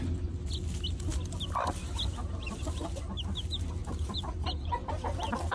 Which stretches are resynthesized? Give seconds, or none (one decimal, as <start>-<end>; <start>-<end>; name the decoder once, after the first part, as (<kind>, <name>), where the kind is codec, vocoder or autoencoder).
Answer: 1.8-3.0 (vocoder, BigVGAN v2); 3.8-4.9